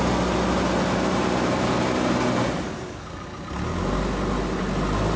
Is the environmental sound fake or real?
real